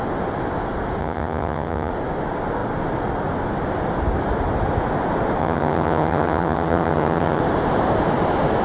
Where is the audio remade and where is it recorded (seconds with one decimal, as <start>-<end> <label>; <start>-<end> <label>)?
0.0-1.0 recorded; 1.0-1.9 remade; 1.9-5.4 recorded; 5.4-7.4 remade; 7.4-8.6 recorded